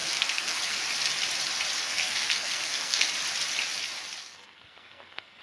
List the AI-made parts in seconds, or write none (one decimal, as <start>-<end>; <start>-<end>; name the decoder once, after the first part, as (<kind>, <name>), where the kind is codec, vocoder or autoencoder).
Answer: 0.0-0.8 (codec, SNAC); 1.8-3.1; 4.2-5.4